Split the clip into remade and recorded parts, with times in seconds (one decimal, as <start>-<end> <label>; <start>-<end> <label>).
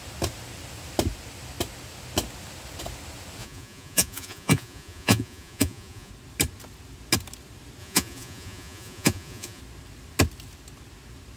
0.0-3.4 recorded; 3.4-6.1 remade; 6.1-7.8 recorded; 7.8-9.6 remade; 9.6-11.4 recorded